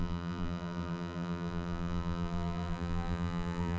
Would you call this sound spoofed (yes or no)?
yes